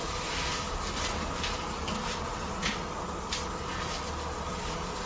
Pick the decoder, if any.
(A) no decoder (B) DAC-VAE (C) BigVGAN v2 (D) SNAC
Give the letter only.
A